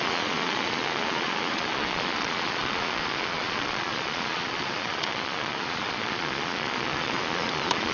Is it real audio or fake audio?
fake